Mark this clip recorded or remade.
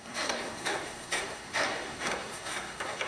remade